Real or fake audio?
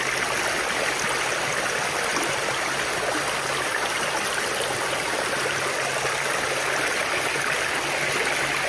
real